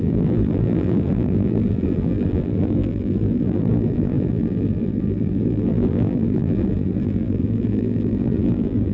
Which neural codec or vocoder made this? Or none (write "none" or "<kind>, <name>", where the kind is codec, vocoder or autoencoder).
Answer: vocoder, BigVGAN v2